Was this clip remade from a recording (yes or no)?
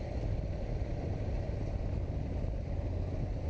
no